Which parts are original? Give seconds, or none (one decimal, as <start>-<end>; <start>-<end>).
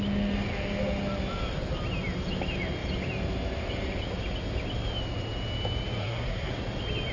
0.0-6.0; 6.5-7.1